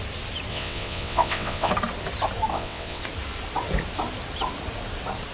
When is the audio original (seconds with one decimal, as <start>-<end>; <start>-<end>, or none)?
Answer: 0.0-0.5; 1.7-2.5; 3.0-5.3